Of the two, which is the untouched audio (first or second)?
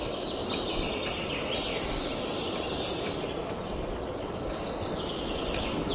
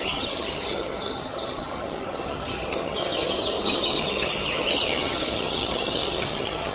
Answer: first